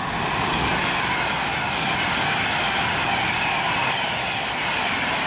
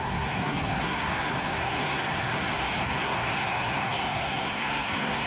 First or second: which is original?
first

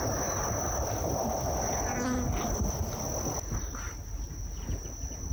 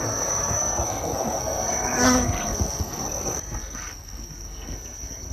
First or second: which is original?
first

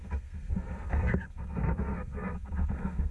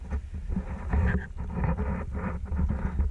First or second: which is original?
second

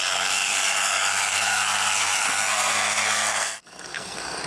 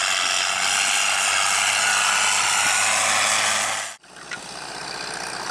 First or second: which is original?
second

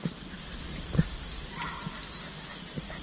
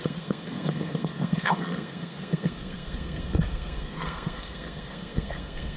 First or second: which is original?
first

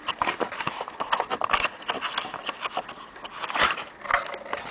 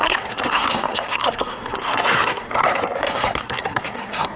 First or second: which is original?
first